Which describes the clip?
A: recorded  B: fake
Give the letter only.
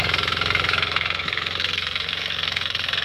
B